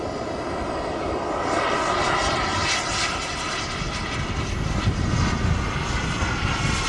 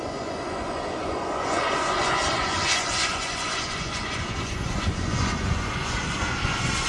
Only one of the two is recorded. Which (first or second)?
first